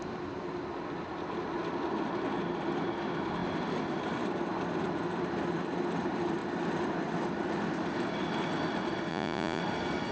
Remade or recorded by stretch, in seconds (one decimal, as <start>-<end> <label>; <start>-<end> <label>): 0.0-9.1 recorded; 9.1-9.6 remade; 9.6-10.1 recorded